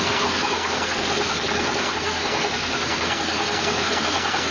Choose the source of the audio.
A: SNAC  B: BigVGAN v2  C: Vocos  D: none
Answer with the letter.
A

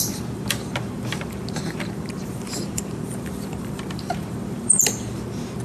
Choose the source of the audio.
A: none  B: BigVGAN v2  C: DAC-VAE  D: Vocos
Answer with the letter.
B